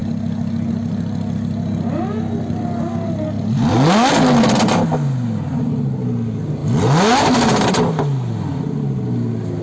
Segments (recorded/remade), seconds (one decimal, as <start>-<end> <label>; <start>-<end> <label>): 0.0-9.6 recorded